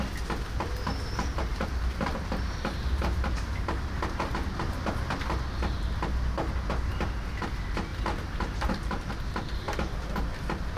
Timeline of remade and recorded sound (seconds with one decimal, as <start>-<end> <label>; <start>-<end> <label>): 0.0-1.5 recorded; 1.5-4.3 remade; 4.3-7.9 recorded; 7.9-9.1 remade; 9.1-10.8 recorded